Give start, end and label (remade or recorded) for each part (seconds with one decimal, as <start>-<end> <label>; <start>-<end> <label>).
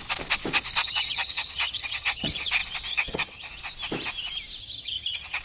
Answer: 0.0-0.8 recorded; 0.8-2.5 remade; 2.5-2.9 recorded; 2.9-3.5 remade; 3.5-4.6 recorded; 4.6-5.4 remade